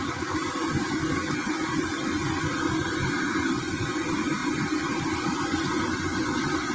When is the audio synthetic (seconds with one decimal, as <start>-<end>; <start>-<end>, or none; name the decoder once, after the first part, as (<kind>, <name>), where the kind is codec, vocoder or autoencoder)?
none